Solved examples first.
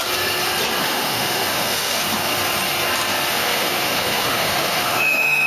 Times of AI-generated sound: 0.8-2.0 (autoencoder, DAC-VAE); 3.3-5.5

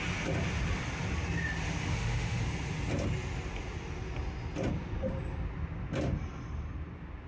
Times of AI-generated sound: 1.9-2.4 (autoencoder, DAC-VAE)

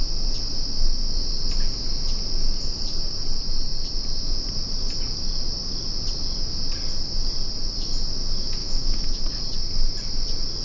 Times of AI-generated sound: 8.6-9.2 (autoencoder, DAC-VAE)